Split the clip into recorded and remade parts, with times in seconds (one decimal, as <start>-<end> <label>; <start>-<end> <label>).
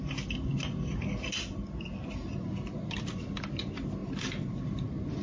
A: 0.0-4.0 recorded; 4.0-4.6 remade; 4.6-5.2 recorded